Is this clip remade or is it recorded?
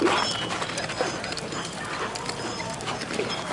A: recorded